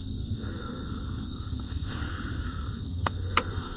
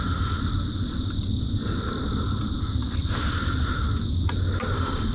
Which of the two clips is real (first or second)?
second